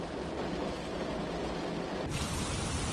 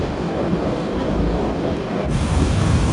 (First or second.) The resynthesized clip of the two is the second